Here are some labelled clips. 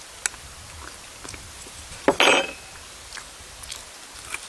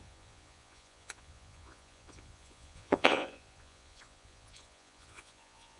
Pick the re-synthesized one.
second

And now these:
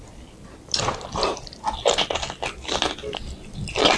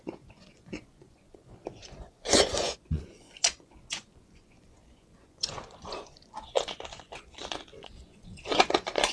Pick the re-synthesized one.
second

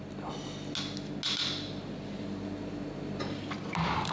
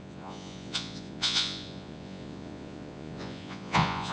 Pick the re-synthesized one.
second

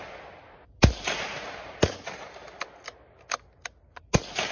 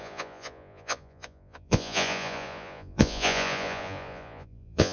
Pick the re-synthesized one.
second